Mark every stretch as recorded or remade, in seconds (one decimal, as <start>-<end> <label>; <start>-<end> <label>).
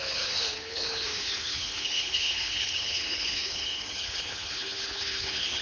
0.0-5.6 remade